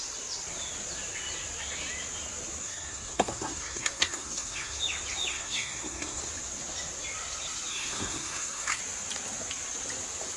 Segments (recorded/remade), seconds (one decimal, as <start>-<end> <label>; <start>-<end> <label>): 0.0-2.6 recorded; 2.6-4.8 remade; 4.8-5.3 recorded; 5.3-6.2 remade; 6.2-7.7 recorded; 7.7-8.8 remade; 8.8-10.4 recorded